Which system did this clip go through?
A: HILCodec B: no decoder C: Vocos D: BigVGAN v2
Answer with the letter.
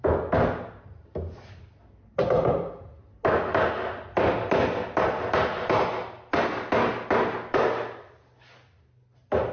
B